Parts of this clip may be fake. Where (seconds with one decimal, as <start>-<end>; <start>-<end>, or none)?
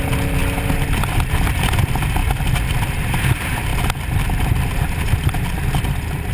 none